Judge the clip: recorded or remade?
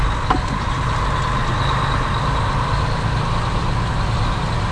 recorded